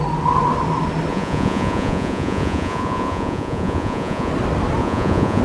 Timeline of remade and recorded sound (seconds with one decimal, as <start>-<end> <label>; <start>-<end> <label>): 0.0-1.1 recorded; 1.1-4.3 remade; 4.3-4.8 recorded; 4.8-5.4 remade